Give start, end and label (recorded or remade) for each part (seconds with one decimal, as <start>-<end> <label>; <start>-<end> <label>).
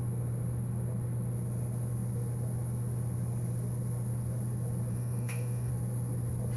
0.0-4.9 recorded; 4.9-5.7 remade; 5.7-6.6 recorded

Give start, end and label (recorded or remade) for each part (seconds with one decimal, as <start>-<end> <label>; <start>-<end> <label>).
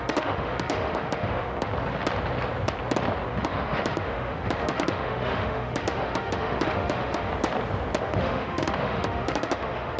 0.0-1.7 remade; 1.7-3.3 recorded; 3.3-7.3 remade; 7.3-8.0 recorded; 8.0-10.0 remade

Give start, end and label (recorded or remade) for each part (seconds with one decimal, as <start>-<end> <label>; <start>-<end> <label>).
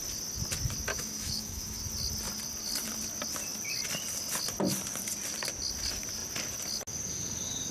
0.0-0.9 recorded; 0.9-1.8 remade; 1.8-7.7 recorded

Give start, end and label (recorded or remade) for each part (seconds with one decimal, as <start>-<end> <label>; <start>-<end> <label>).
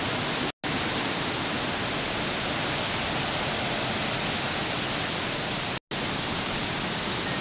0.0-7.4 recorded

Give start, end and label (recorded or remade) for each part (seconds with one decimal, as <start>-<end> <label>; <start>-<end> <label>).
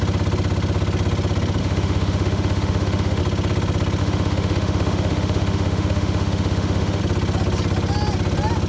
0.0-1.6 recorded; 1.6-3.2 remade; 3.2-4.0 recorded; 4.0-7.0 remade; 7.0-8.7 recorded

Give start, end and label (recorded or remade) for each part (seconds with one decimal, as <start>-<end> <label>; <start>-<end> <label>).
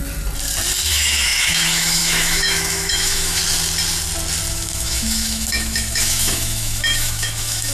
0.0-0.9 recorded; 0.9-3.4 remade; 3.4-4.5 recorded; 4.5-7.7 remade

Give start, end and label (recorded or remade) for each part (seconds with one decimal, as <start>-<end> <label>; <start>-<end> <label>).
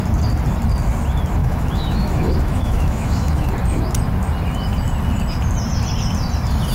0.0-1.4 recorded; 1.4-3.5 remade; 3.5-6.7 recorded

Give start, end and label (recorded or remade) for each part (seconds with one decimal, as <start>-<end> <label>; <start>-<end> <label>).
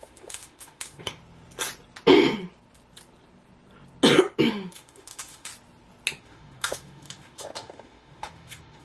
0.0-1.2 remade; 1.2-4.5 recorded; 4.5-5.5 remade; 5.5-6.2 recorded; 6.2-8.8 remade